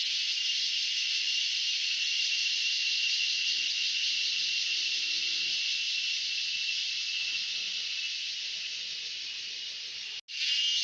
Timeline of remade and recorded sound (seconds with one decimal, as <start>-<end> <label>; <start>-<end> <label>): 0.0-0.8 recorded; 0.8-3.2 remade; 3.2-10.8 recorded